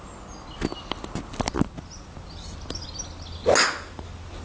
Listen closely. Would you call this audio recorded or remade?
recorded